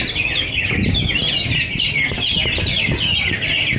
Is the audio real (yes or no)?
yes